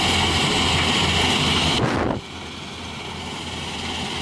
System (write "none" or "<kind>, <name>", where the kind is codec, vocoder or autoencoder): none